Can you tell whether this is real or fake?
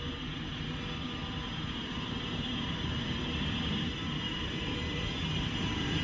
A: fake